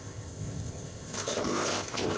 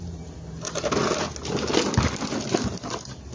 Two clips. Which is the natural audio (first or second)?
second